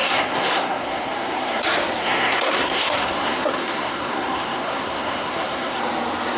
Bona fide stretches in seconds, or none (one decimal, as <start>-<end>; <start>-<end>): 1.6-2.0; 5.8-6.4